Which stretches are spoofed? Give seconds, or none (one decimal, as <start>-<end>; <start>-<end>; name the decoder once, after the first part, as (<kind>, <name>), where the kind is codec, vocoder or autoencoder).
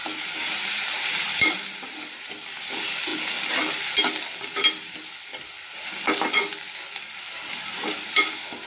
0.0-3.1 (vocoder, BigVGAN v2); 7.6-8.7